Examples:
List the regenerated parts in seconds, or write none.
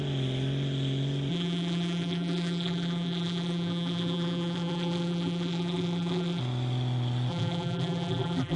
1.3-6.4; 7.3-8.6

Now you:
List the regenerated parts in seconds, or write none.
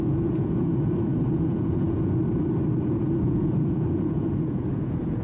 0.0-2.2; 2.9-5.2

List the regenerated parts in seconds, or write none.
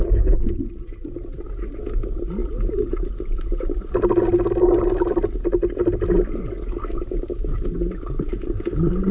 2.4-3.9